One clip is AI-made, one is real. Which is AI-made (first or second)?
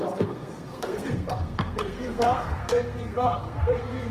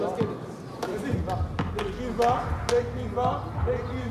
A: first